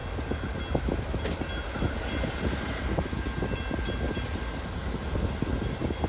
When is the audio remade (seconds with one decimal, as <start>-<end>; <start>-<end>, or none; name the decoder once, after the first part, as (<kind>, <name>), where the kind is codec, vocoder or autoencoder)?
none